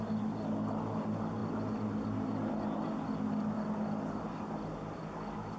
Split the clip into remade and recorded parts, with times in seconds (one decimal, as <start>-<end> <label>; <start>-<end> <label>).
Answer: 0.0-5.6 recorded